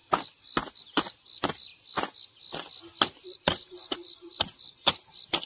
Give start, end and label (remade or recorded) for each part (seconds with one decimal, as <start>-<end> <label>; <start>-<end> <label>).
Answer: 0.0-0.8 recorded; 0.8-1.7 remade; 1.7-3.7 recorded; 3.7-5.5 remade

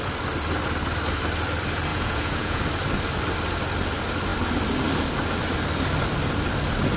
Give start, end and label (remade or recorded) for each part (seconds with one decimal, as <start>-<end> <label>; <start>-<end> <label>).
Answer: 0.0-1.9 recorded; 1.9-2.6 remade; 2.6-7.0 recorded

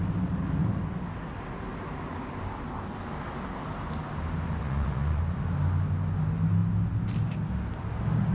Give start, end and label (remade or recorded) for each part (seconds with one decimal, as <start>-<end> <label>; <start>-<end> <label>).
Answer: 0.0-4.6 recorded; 4.6-5.2 remade; 5.2-8.3 recorded